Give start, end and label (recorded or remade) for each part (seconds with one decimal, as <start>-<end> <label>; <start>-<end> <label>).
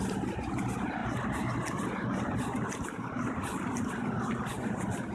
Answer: 0.0-5.1 recorded